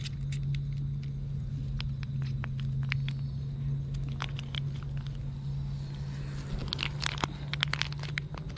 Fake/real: real